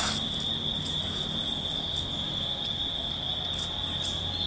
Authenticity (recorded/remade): recorded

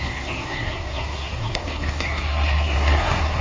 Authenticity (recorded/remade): remade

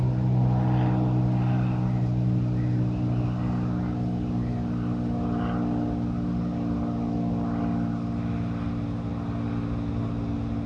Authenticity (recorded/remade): recorded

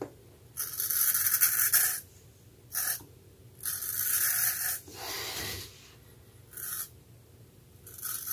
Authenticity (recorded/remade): recorded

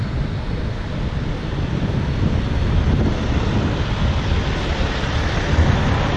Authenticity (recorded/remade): recorded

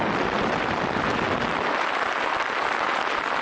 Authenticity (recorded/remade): recorded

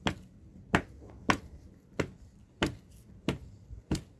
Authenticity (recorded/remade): recorded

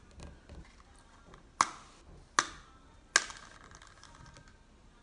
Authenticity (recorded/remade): recorded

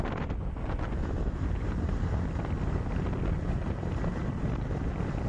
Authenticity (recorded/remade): recorded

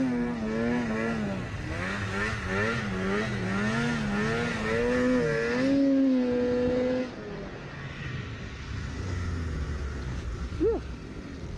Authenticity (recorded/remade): recorded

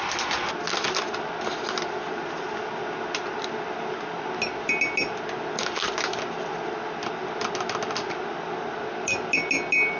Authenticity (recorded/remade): recorded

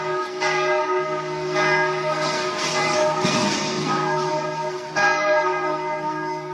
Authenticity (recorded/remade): remade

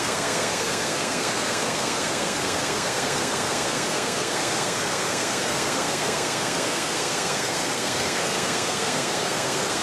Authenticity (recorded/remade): remade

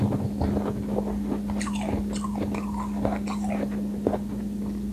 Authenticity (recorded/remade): recorded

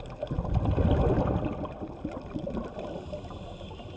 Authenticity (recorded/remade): recorded